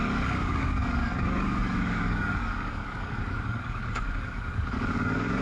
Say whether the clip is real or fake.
fake